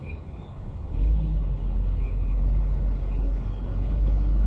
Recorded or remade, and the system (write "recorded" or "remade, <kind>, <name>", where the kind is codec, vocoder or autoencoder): remade, codec, HILCodec